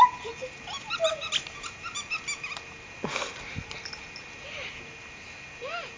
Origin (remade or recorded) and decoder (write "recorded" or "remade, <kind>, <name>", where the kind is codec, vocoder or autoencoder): recorded